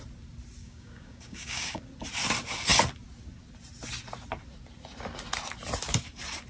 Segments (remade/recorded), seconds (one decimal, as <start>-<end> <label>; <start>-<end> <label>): 0.0-0.6 recorded; 0.6-1.8 remade; 1.8-6.5 recorded